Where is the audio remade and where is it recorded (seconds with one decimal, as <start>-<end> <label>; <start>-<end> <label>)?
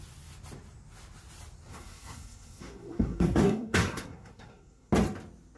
0.0-1.7 recorded; 1.7-4.9 remade; 4.9-5.6 recorded